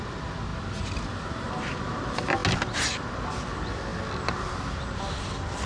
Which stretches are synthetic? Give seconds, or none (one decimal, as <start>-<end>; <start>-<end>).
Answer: none